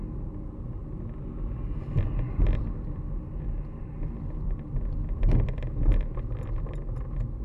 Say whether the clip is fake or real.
real